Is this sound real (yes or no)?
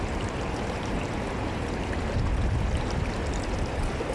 no